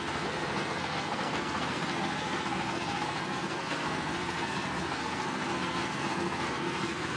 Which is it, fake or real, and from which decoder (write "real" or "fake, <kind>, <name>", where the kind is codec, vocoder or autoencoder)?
fake, codec, SNAC